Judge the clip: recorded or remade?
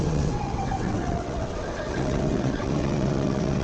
remade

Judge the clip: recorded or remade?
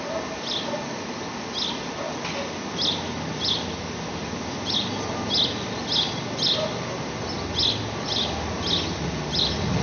recorded